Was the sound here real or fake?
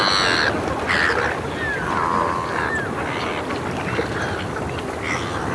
real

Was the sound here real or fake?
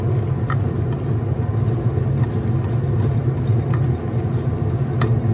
real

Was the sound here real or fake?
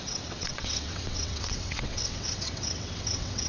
fake